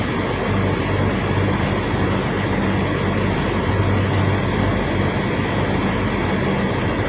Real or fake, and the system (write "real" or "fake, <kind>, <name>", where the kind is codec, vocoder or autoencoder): real